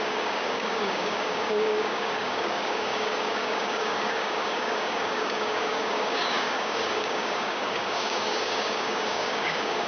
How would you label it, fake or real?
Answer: fake